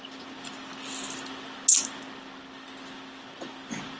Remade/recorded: recorded